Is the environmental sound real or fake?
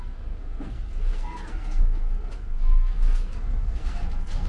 fake